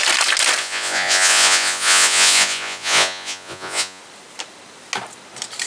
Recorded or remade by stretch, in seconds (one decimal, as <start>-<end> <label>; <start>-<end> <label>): 0.0-0.6 recorded; 0.6-4.0 remade; 4.0-5.7 recorded